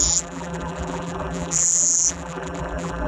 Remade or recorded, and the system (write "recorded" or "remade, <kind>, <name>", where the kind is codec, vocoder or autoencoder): remade, vocoder, BigVGAN v2